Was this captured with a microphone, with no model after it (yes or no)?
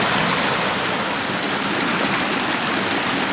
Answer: yes